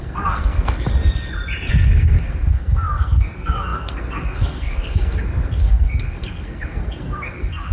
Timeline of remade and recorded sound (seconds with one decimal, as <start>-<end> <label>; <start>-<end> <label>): 0.0-0.9 remade; 0.9-1.7 recorded; 1.7-7.7 remade